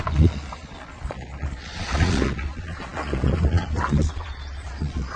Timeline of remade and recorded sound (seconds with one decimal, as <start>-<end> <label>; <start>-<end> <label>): 0.0-5.2 remade